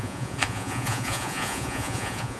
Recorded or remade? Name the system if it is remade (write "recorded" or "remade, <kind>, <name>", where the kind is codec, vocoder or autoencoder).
remade, vocoder, Vocos